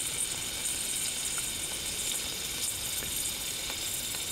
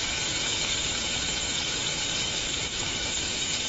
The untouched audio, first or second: first